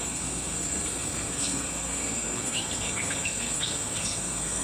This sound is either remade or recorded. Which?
remade